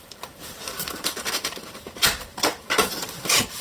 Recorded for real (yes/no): no